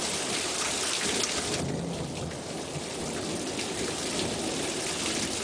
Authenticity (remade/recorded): recorded